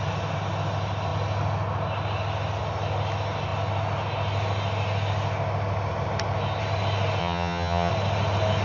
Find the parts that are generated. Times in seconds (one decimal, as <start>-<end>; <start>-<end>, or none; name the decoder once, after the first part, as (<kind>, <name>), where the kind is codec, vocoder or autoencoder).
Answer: 7.2-7.9 (vocoder, HiFi-GAN)